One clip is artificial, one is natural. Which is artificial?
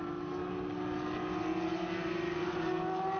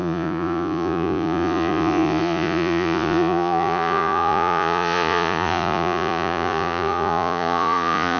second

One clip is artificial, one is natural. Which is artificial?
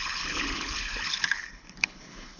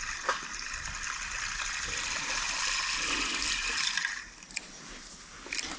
first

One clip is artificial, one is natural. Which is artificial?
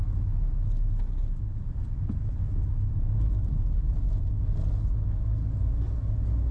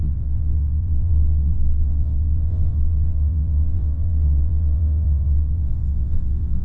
second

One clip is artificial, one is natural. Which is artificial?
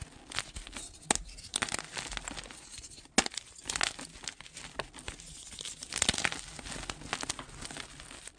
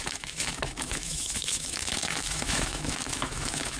second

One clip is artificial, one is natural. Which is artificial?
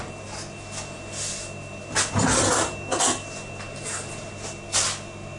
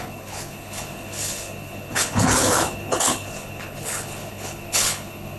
second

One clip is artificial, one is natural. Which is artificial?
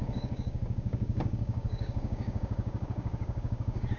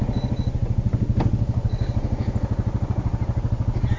first